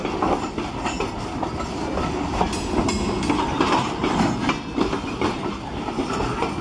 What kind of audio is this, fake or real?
real